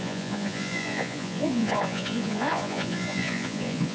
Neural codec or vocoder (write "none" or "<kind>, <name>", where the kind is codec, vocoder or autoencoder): vocoder, Vocos